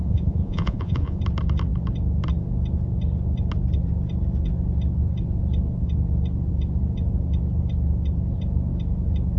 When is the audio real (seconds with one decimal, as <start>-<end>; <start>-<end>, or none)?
1.2-9.4